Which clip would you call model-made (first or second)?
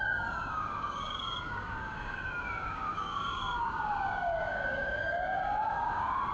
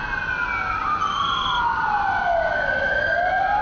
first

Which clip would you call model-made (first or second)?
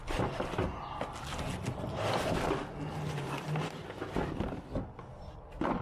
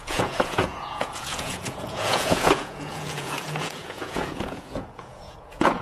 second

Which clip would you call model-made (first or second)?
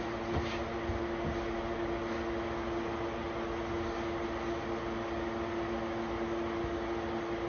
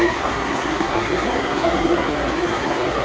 second